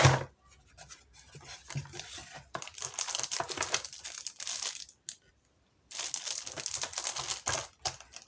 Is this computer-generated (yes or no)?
no